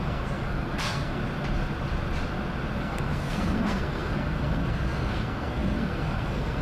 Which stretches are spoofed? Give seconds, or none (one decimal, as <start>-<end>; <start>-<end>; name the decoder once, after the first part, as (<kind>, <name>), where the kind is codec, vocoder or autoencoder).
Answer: 0.0-1.2 (codec, SNAC); 2.8-6.6